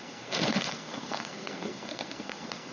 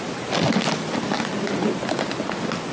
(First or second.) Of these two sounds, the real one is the second